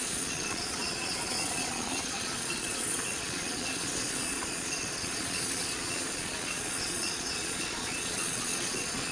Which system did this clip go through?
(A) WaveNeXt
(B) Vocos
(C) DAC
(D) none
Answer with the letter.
B